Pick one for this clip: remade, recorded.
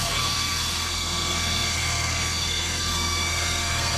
remade